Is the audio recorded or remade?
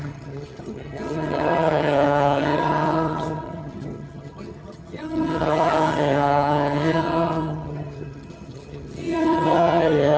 remade